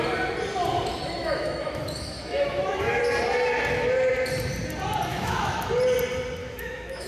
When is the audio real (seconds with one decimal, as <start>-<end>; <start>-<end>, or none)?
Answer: 0.0-1.2; 3.0-5.1; 5.7-6.4